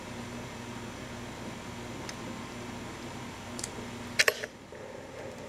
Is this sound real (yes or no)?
yes